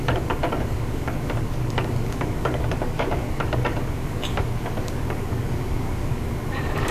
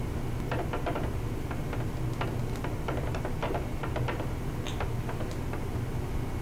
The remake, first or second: first